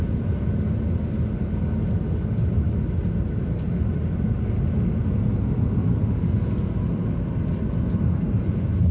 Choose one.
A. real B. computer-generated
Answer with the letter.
A